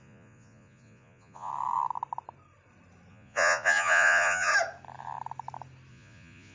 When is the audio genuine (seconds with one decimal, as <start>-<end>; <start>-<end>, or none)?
1.5-3.1; 4.5-5.9